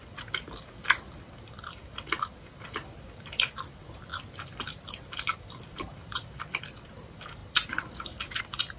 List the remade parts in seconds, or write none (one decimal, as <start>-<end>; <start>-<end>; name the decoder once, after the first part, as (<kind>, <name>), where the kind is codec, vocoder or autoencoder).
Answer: 0.0-4.1 (vocoder, BigVGAN v2); 4.9-7.4; 8.4-8.8

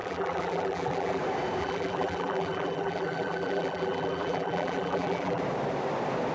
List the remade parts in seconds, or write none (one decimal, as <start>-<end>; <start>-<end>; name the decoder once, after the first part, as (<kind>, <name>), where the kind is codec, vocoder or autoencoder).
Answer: 0.0-1.2 (vocoder, BigVGAN v2); 1.6-5.4